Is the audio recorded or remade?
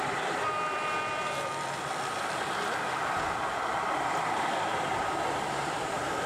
remade